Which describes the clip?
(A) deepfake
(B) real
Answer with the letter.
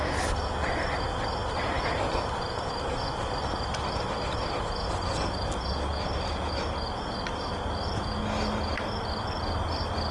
B